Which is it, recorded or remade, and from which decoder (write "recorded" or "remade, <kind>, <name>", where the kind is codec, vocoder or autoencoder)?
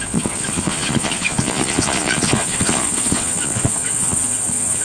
remade, vocoder, Vocos